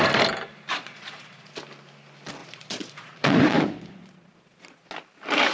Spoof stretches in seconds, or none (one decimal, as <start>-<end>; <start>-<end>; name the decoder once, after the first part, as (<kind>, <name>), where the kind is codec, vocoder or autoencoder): 0.7-1.5 (vocoder, Vocos); 2.4-4.9